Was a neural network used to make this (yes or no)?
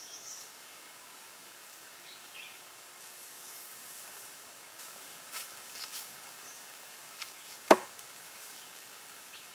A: yes